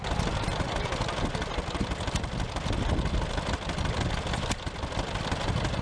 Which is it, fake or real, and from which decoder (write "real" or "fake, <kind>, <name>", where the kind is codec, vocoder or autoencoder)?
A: real